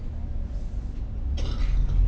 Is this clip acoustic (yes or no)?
yes